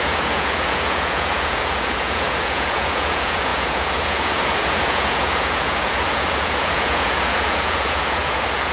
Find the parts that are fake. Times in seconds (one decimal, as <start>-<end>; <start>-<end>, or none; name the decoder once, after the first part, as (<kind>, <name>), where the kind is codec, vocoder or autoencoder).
0.0-8.7 (vocoder, Vocos)